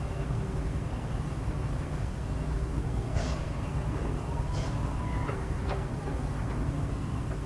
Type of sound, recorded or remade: remade